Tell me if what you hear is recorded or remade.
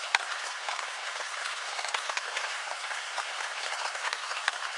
remade